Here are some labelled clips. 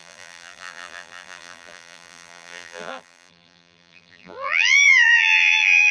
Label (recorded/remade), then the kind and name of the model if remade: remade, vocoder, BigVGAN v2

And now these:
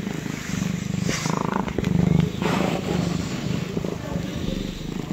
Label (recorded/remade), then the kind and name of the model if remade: recorded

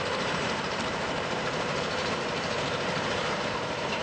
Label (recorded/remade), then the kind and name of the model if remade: remade, vocoder, BigVGAN v2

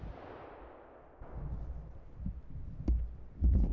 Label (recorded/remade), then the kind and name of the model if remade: recorded